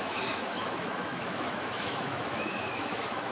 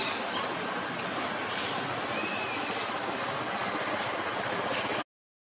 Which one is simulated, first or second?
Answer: first